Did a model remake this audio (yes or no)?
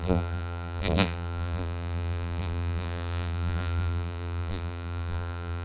yes